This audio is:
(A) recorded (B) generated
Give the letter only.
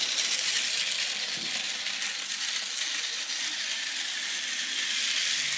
A